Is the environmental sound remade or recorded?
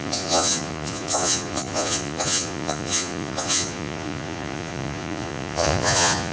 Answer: remade